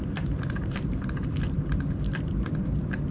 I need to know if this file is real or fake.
fake